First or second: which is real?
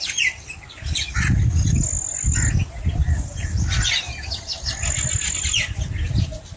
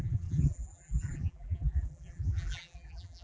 first